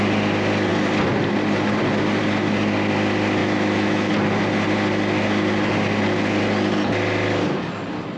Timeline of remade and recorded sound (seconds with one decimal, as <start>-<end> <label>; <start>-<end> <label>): 0.0-3.4 recorded; 3.4-4.1 remade; 4.1-8.2 recorded